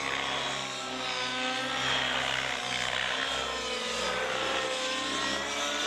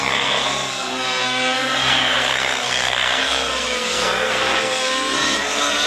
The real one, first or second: first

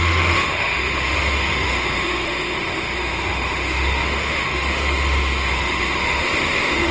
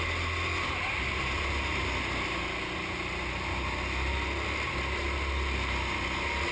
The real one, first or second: second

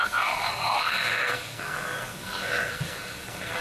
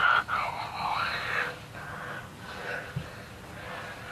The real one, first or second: second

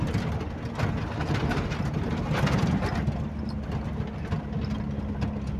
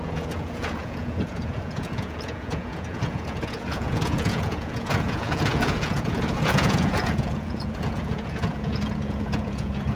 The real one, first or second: first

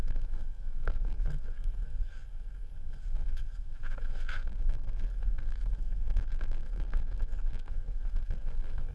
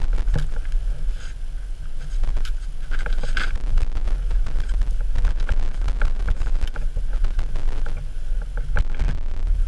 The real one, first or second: second